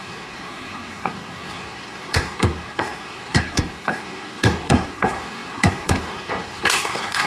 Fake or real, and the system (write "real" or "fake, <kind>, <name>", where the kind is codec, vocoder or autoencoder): fake, codec, SNAC